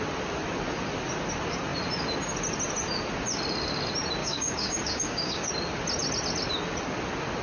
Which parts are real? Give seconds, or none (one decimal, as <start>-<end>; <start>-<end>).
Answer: 0.0-4.2; 5.5-7.4